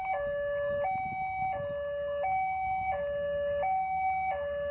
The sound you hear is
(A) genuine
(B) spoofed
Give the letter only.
A